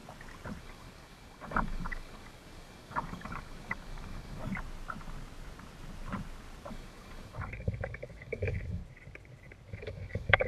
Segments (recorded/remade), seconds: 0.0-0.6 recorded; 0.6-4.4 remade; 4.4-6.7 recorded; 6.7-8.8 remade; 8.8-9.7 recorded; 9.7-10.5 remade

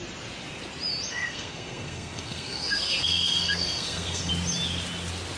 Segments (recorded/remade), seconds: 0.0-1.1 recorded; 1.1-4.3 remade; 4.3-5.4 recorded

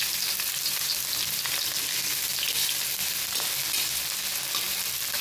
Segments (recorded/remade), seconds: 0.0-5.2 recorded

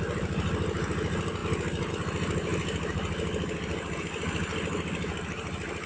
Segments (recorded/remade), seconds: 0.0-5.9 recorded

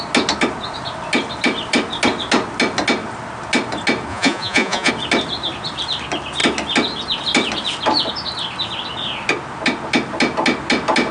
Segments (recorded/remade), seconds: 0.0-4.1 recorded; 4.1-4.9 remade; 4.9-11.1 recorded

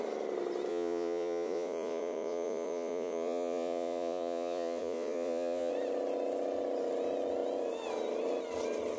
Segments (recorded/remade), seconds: 0.0-0.7 recorded; 0.7-5.7 remade; 5.7-9.0 recorded